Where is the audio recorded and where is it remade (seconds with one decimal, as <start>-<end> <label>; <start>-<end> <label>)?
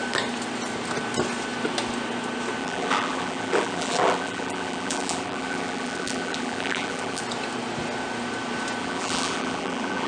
0.0-2.6 recorded; 2.6-7.2 remade; 7.2-8.8 recorded; 8.8-10.1 remade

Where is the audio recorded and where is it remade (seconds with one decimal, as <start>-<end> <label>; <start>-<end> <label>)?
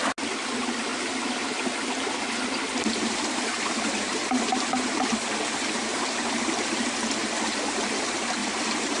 0.0-3.5 recorded; 3.5-5.0 remade; 5.0-5.9 recorded; 5.9-6.4 remade; 6.4-8.4 recorded; 8.4-9.0 remade